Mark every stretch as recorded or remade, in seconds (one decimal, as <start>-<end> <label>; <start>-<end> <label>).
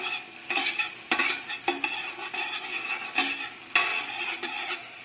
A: 0.0-3.9 recorded; 3.9-5.0 remade